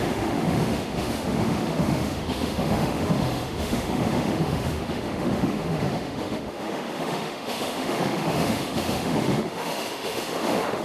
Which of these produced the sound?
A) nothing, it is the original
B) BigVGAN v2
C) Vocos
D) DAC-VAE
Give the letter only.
D